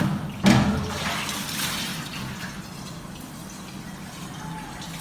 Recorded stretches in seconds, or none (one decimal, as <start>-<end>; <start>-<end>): 0.0-5.0